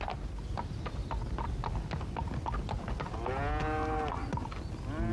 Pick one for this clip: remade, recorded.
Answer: recorded